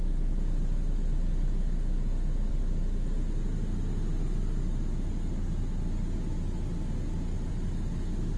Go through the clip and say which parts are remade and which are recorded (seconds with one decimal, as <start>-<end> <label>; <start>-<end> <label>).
0.0-8.4 recorded